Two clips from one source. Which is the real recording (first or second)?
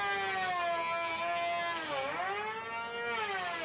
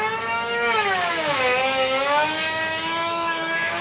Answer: first